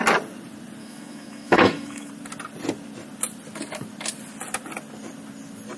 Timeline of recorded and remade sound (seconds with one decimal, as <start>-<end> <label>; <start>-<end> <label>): 0.0-0.8 recorded; 0.8-2.1 remade; 2.1-5.8 recorded